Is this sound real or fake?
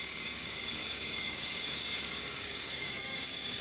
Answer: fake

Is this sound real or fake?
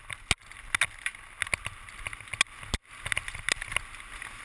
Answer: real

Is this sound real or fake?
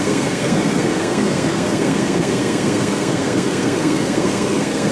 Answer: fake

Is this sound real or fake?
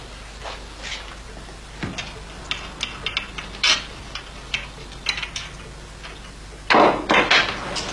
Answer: real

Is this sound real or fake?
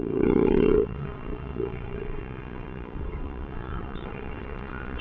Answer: fake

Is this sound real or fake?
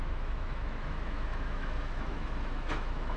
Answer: fake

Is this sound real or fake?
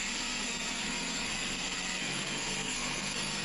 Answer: fake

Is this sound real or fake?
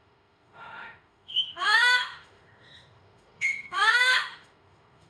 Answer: fake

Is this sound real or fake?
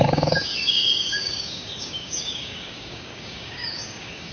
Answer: fake